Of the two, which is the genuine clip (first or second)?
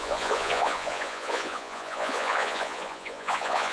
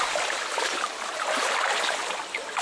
second